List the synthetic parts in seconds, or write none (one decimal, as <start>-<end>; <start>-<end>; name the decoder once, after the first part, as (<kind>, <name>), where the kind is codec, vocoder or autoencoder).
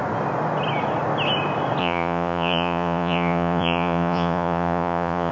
1.8-5.3 (vocoder, Vocos)